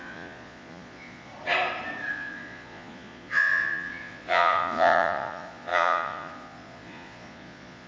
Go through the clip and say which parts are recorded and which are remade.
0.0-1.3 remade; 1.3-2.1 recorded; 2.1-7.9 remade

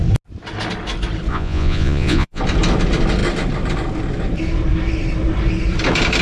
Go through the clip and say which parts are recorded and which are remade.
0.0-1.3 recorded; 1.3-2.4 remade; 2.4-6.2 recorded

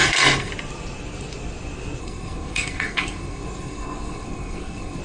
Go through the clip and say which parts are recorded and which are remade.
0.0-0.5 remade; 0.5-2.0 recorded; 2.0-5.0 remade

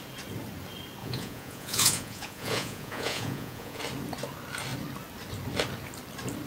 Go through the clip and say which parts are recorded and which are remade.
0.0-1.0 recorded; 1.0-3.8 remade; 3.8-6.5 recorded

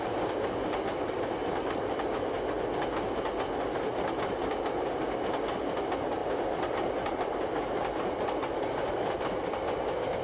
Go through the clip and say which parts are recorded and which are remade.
0.0-6.2 recorded; 6.2-7.6 remade; 7.6-10.2 recorded